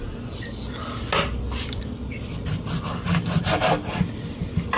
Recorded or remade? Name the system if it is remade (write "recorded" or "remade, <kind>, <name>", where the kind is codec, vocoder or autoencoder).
recorded